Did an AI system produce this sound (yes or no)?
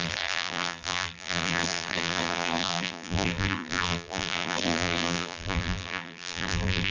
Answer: yes